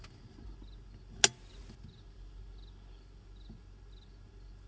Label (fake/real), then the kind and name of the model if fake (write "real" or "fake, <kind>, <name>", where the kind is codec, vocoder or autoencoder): real